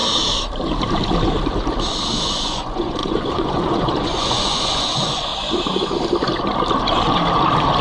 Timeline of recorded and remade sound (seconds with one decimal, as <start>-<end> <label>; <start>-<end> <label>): 0.0-2.2 recorded; 2.2-5.3 remade; 5.3-7.8 recorded